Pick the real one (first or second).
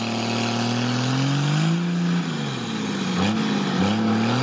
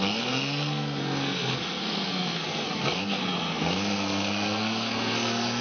first